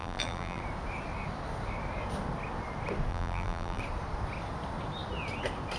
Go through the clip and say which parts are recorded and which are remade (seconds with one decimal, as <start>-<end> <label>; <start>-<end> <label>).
0.0-0.6 remade; 0.6-3.1 recorded; 3.1-3.8 remade; 3.8-5.8 recorded